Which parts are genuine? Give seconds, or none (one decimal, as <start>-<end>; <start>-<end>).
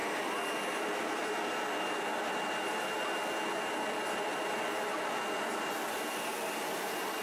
0.0-7.2